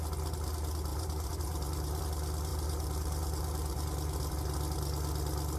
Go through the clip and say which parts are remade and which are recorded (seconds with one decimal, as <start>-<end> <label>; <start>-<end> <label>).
0.0-0.9 recorded; 0.9-2.0 remade; 2.0-2.5 recorded; 2.5-4.3 remade; 4.3-5.6 recorded